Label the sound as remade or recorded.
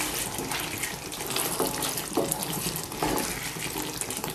recorded